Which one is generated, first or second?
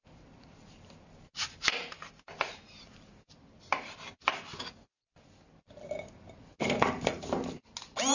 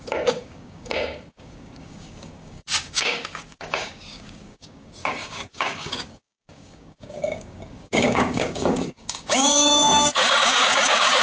second